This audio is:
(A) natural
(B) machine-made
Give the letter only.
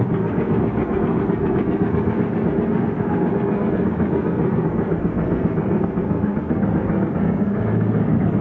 B